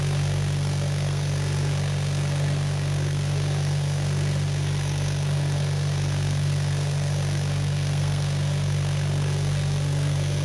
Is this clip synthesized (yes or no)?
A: yes